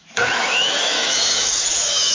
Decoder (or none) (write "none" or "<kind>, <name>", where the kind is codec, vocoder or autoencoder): autoencoder, DAC-VAE